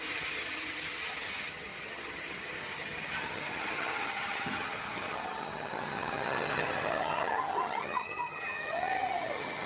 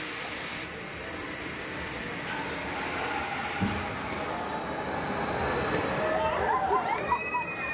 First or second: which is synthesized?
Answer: first